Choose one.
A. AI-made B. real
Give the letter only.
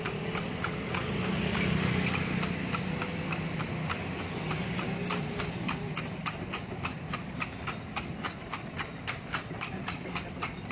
B